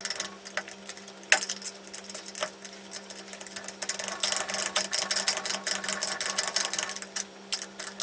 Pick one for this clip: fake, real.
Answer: real